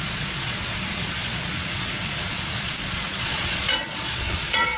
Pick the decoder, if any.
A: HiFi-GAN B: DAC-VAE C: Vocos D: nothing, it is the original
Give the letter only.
C